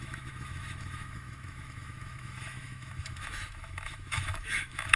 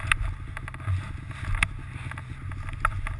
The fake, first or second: first